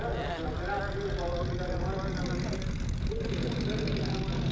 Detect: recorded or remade recorded